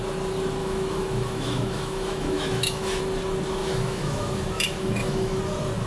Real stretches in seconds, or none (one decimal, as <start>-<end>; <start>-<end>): 0.0-0.6; 3.0-3.6; 5.4-5.9

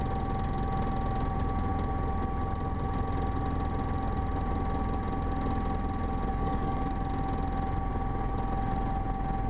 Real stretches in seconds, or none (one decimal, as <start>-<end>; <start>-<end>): 0.0-6.3; 6.9-9.5